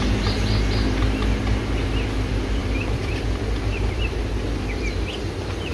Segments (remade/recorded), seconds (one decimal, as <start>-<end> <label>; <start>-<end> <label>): 0.0-2.6 recorded; 2.6-4.2 remade; 4.2-5.7 recorded